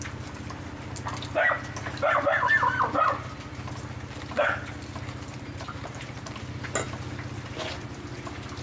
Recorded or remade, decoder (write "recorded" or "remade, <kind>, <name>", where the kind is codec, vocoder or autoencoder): recorded